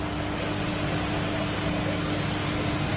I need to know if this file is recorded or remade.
recorded